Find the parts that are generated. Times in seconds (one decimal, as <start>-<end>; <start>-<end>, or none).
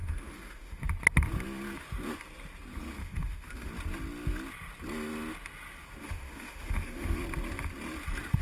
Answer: 0.0-0.8; 3.0-3.7; 6.0-7.2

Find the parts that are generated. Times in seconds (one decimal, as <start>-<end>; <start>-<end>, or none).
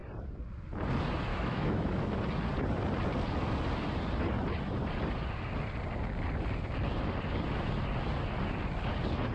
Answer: 1.3-2.2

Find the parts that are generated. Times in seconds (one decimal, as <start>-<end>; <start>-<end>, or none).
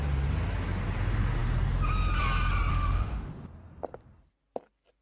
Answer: 2.7-3.3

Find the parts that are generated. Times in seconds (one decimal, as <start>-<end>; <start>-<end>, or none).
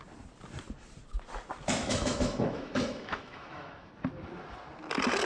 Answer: 1.8-3.9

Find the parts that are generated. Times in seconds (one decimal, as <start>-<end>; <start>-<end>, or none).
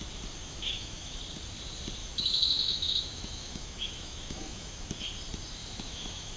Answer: 0.4-1.2; 2.0-5.0; 5.6-6.4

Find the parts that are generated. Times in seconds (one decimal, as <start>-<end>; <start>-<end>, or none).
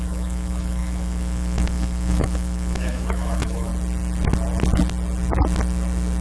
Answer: 0.0-3.7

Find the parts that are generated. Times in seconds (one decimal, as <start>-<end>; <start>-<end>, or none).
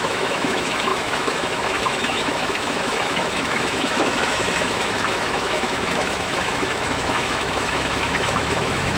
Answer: 0.0-9.0